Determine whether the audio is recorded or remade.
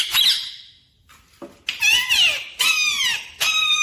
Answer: recorded